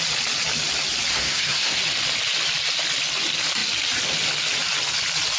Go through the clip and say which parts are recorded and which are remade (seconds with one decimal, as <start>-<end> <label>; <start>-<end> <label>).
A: 0.0-1.1 recorded; 1.1-1.8 remade; 1.8-5.4 recorded